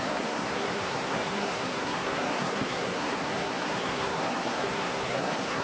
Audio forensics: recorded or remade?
remade